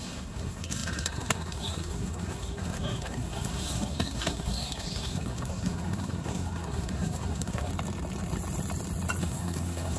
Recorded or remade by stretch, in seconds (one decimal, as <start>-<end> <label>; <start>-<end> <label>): 0.0-7.7 remade; 7.7-9.2 recorded; 9.2-10.0 remade